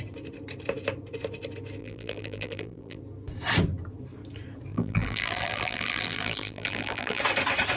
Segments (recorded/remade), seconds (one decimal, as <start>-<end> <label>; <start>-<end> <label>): 0.0-1.8 recorded; 1.8-3.0 remade; 3.0-4.7 recorded; 4.7-7.2 remade; 7.2-7.8 recorded